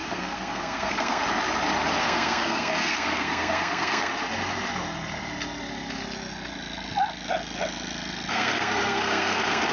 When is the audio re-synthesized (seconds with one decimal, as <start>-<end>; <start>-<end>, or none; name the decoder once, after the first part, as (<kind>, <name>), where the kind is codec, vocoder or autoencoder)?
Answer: 0.0-1.2 (codec, SNAC); 2.0-4.1; 8.3-9.7